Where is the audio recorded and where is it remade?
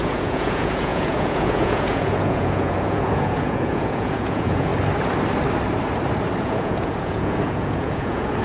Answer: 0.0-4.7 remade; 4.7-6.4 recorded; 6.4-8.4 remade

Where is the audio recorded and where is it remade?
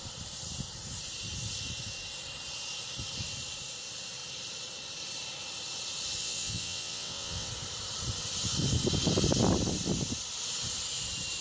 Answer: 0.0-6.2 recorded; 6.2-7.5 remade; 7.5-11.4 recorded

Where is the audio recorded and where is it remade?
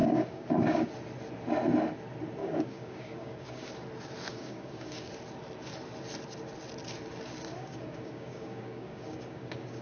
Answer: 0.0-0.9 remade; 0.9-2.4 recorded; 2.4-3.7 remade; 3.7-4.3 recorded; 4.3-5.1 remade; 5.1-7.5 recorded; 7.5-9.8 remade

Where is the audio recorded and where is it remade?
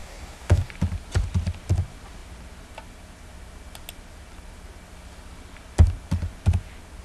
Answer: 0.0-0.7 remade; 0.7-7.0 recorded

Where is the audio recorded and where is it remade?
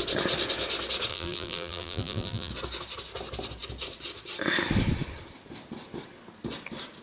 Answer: 0.0-1.1 recorded; 1.1-2.5 remade; 2.5-7.0 recorded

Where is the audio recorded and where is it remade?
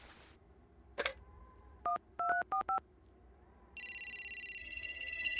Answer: 0.0-4.6 recorded; 4.6-5.4 remade